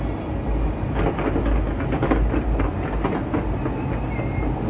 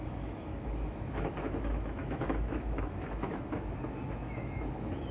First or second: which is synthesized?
second